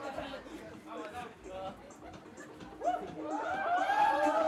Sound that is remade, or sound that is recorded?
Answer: remade